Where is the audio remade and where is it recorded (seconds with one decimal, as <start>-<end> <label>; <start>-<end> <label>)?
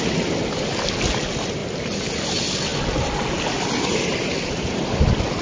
0.0-5.4 recorded